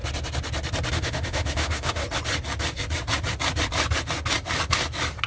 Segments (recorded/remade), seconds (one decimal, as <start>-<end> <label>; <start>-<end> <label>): 0.0-0.9 recorded; 0.9-2.0 remade; 2.0-5.3 recorded

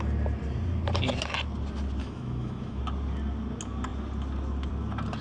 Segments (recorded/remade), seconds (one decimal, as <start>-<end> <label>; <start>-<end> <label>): 0.0-2.0 recorded; 2.0-2.8 remade; 2.8-5.2 recorded

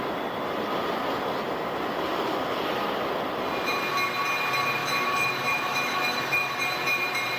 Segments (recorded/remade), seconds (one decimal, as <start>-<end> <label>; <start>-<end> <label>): 0.0-4.8 recorded; 4.8-6.6 remade; 6.6-7.4 recorded

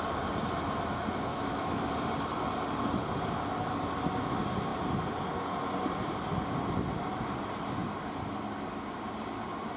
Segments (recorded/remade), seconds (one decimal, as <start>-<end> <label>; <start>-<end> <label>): 0.0-1.3 recorded; 1.3-1.9 remade; 1.9-9.8 recorded

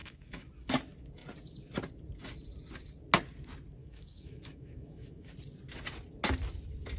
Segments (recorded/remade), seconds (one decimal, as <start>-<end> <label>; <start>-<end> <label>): 0.0-0.5 remade; 0.5-3.8 recorded; 3.8-5.3 remade; 5.3-7.0 recorded

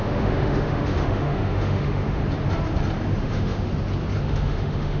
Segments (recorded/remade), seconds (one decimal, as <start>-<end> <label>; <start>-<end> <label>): 0.0-2.2 remade; 2.2-3.2 recorded; 3.2-3.7 remade; 3.7-4.2 recorded; 4.2-5.0 remade